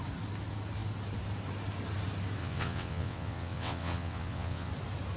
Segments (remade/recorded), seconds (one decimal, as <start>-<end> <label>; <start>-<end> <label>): 0.0-2.4 recorded; 2.4-4.7 remade; 4.7-5.2 recorded